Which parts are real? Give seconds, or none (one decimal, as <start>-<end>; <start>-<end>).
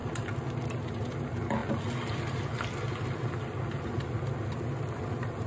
0.0-5.5